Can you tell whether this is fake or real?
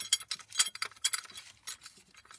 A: real